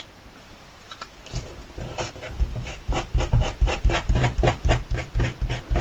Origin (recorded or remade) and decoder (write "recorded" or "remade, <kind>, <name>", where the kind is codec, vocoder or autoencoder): remade, vocoder, BigVGAN v2